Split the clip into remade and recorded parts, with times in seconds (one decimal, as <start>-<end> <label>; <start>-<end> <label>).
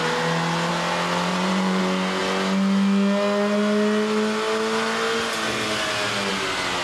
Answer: 0.0-1.3 recorded; 1.3-1.8 remade; 1.8-6.8 recorded